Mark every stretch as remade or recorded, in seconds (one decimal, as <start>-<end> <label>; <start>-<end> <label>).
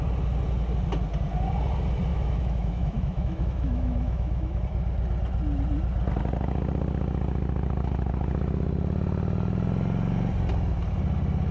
0.0-2.1 recorded; 2.1-4.6 remade; 4.6-11.5 recorded